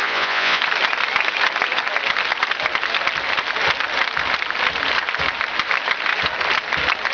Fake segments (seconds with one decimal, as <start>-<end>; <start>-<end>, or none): 0.0-0.6